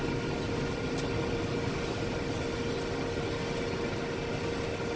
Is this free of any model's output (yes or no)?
yes